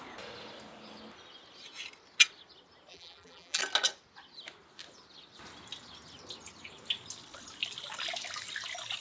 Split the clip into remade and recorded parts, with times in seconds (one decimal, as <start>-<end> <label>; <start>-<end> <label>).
0.0-2.9 recorded; 2.9-3.6 remade; 3.6-9.0 recorded